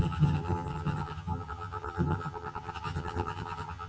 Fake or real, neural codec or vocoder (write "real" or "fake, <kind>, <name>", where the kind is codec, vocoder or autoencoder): fake, vocoder, HiFi-GAN